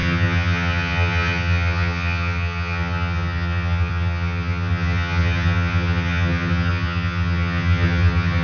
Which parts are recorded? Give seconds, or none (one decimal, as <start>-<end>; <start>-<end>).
none